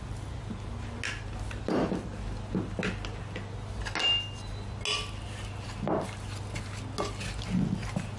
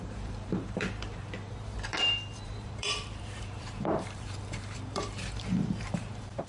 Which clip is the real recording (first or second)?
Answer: first